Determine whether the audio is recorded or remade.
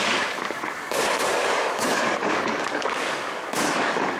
remade